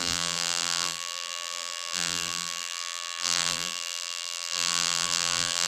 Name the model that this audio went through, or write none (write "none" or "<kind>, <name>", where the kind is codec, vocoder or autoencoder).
vocoder, BigVGAN v2